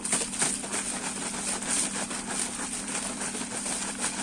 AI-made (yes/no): no